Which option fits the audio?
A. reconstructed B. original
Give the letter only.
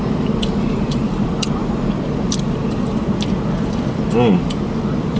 A